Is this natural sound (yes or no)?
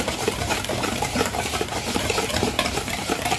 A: no